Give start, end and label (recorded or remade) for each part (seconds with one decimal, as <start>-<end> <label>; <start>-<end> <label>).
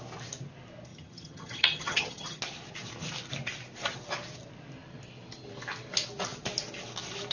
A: 0.0-0.9 recorded; 0.9-2.4 remade; 2.4-7.3 recorded